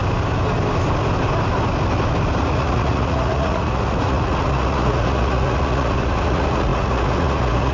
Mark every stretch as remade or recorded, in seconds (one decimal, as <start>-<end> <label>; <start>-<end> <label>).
0.0-2.4 recorded; 2.4-7.7 remade